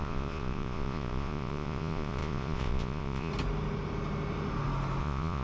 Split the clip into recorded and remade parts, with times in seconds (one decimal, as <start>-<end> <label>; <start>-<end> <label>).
0.0-3.3 remade; 3.3-5.0 recorded; 5.0-5.4 remade